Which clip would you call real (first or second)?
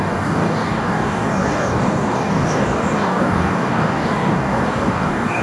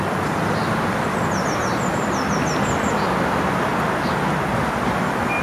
second